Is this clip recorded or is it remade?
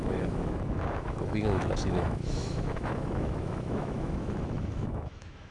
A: remade